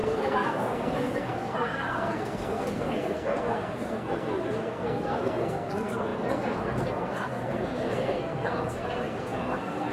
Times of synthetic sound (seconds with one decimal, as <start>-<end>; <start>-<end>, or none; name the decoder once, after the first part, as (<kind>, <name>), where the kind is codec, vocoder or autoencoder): 0.0-9.9 (codec, SNAC)